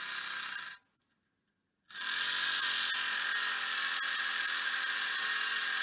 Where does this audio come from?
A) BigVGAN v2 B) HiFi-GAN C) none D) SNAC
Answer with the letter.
C